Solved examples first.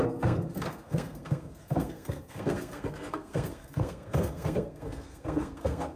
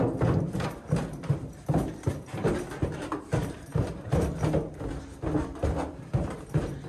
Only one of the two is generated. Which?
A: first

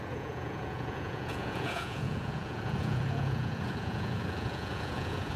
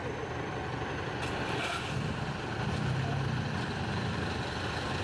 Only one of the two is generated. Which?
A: first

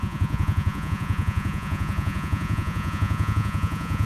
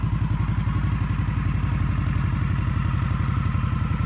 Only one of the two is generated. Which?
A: first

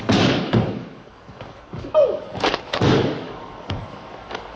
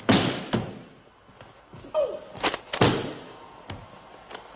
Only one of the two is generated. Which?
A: first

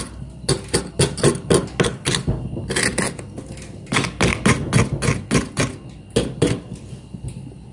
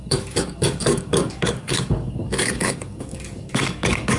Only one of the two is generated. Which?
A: second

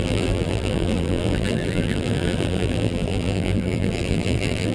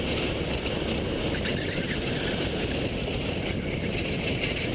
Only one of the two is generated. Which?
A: first